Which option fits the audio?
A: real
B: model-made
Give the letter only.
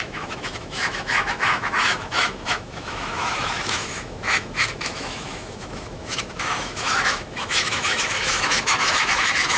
B